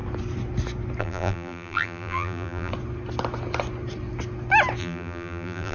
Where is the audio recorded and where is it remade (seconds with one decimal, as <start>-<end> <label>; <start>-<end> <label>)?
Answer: 0.0-1.0 recorded; 1.0-2.7 remade; 2.7-4.8 recorded; 4.8-5.7 remade